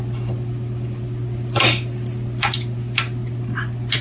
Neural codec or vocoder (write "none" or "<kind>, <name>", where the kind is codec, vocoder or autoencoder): none